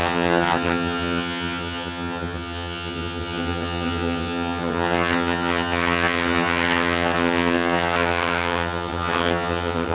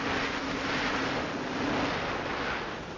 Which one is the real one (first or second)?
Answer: second